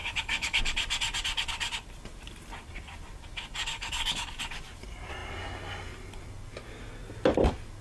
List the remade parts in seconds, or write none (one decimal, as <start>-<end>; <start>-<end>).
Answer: 0.0-0.6; 3.6-4.4